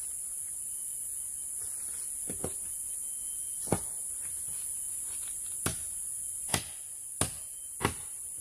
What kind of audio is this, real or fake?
real